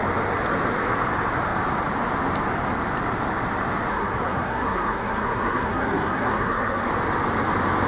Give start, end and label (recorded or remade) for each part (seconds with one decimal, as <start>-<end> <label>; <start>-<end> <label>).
0.0-3.9 recorded; 3.9-6.9 remade; 6.9-7.9 recorded